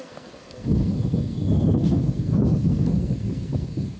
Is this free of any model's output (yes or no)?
no